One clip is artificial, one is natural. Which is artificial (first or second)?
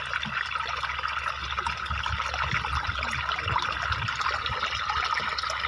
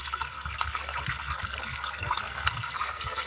second